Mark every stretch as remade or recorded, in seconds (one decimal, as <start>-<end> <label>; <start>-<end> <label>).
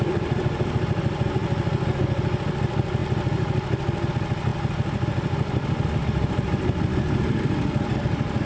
0.0-1.4 remade; 1.4-2.0 recorded; 2.0-3.0 remade; 3.0-4.1 recorded; 4.1-8.5 remade